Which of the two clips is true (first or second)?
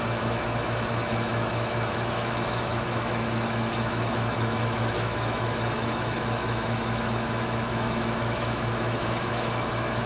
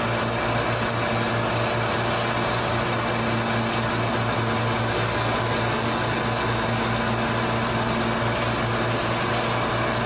second